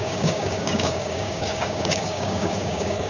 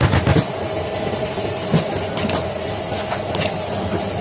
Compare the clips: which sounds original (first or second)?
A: second